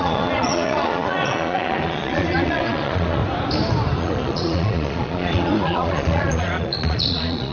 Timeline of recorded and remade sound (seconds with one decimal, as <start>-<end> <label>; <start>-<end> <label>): 0.0-3.2 remade; 3.2-4.0 recorded; 4.0-7.5 remade